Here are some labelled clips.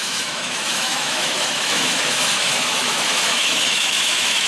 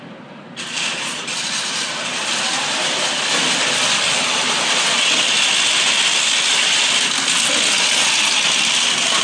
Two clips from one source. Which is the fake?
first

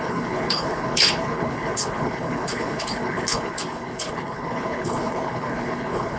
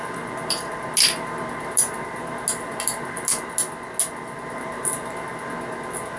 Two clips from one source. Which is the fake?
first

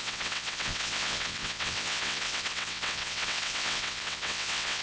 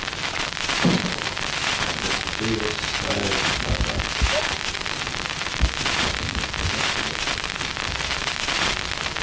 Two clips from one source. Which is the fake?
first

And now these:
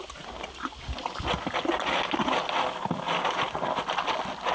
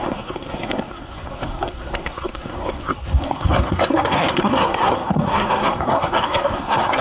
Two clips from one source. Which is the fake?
second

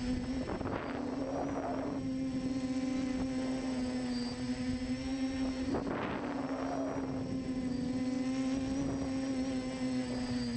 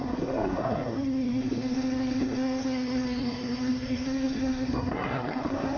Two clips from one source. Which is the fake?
second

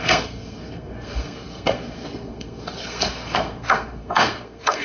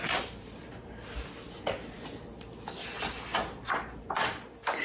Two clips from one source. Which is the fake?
first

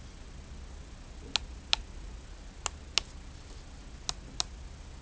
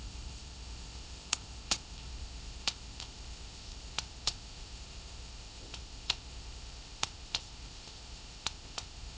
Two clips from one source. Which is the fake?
second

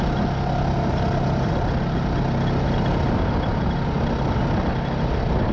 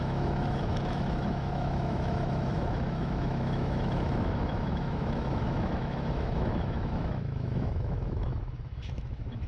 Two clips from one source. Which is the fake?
second